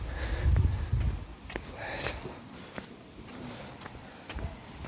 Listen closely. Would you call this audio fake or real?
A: real